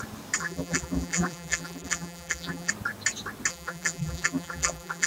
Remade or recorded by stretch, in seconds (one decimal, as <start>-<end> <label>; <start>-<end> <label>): 0.0-0.4 recorded; 0.4-2.7 remade; 2.7-3.5 recorded; 3.5-5.1 remade